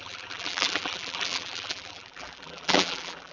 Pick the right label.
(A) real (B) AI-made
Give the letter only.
B